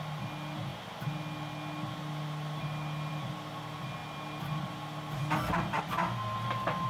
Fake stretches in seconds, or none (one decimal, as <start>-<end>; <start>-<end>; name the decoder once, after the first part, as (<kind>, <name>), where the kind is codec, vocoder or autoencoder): none